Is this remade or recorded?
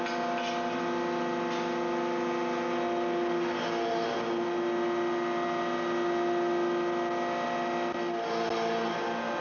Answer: recorded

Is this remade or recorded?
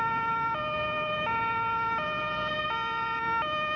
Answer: recorded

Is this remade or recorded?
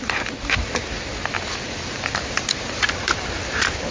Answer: recorded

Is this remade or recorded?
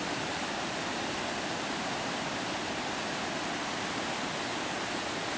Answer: recorded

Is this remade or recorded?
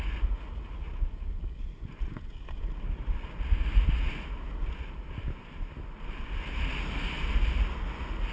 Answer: recorded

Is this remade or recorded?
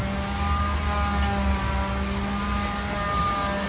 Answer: recorded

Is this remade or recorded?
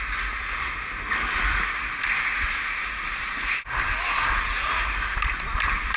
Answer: recorded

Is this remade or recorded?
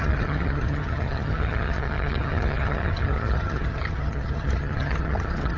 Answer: remade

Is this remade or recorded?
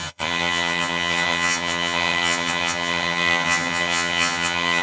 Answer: remade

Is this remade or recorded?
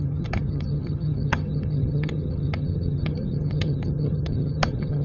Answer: remade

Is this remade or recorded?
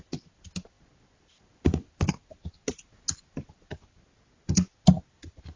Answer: recorded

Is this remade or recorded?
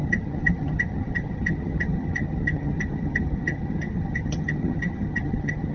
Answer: remade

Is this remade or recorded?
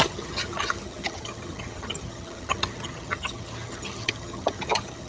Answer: remade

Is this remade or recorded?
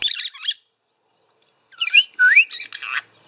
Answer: recorded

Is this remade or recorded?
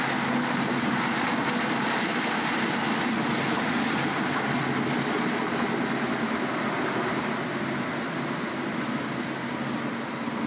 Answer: recorded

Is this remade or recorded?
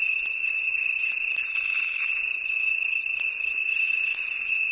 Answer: recorded